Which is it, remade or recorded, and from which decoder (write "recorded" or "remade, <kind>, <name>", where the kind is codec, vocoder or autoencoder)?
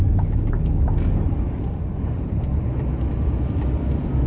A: recorded